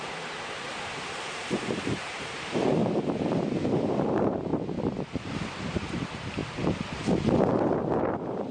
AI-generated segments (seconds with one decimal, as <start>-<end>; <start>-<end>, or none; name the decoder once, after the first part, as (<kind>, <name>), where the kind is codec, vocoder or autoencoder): 0.0-2.8 (vocoder, BigVGAN v2); 3.9-4.5; 5.7-6.4; 8.0-8.5